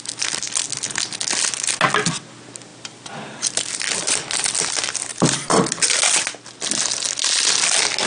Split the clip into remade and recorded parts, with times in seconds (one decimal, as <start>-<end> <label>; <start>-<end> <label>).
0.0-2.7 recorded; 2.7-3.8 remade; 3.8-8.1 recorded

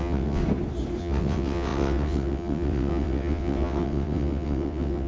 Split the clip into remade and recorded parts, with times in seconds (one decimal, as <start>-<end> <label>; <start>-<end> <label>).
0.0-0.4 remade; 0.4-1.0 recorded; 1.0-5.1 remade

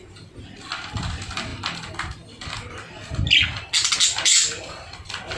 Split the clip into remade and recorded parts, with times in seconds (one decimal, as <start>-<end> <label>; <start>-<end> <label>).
0.0-5.4 recorded